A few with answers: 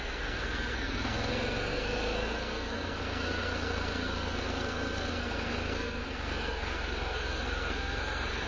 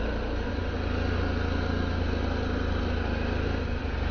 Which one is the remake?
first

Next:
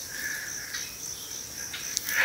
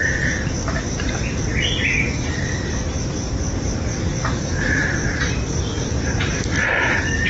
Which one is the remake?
second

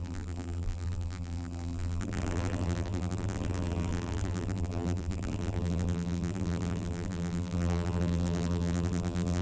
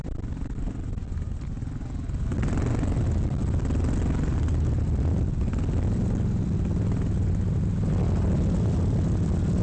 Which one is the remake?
first